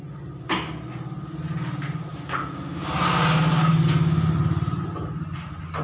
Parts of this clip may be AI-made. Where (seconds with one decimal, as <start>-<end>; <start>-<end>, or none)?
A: none